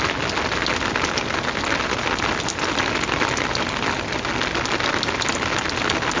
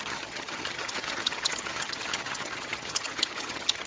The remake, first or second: second